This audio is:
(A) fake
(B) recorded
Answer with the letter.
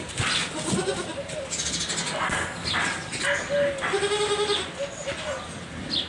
B